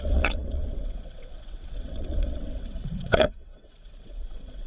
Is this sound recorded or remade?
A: remade